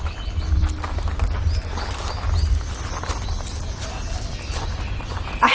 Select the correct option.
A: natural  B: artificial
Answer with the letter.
A